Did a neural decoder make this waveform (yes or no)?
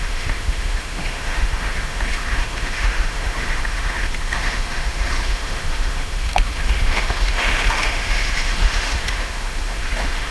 yes